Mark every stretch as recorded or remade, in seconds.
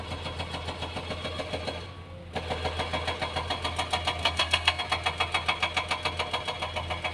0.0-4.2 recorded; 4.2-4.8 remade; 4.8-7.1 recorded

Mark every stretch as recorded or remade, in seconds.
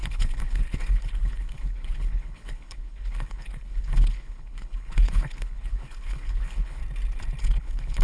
0.0-6.8 remade; 6.8-7.4 recorded; 7.4-8.0 remade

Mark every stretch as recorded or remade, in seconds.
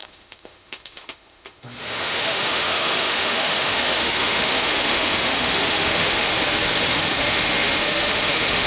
0.0-6.3 remade; 6.3-6.9 recorded; 6.9-8.7 remade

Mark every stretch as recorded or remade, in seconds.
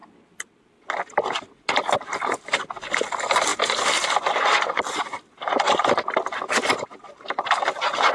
0.0-8.1 recorded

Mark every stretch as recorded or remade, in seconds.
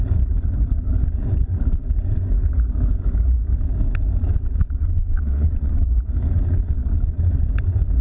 0.0-4.6 recorded; 4.6-5.8 remade; 5.8-8.0 recorded